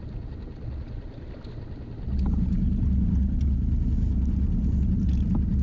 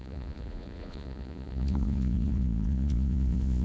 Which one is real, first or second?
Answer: first